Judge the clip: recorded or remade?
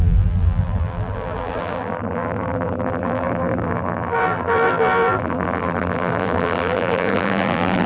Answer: remade